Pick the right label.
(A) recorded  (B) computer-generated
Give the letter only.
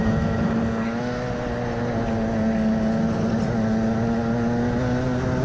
A